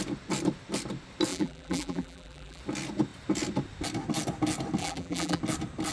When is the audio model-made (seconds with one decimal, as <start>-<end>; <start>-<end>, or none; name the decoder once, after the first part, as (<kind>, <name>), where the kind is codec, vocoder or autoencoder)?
1.3-2.6 (vocoder, BigVGAN v2); 4.8-5.4